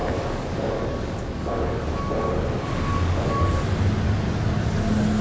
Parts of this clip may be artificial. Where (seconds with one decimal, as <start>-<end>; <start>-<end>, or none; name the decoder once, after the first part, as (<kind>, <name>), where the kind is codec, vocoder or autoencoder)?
0.0-1.9 (codec, DAC); 2.9-3.5